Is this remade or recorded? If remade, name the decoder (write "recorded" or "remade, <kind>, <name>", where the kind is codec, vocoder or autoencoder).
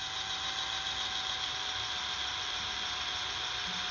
recorded